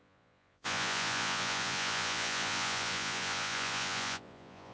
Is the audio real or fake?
fake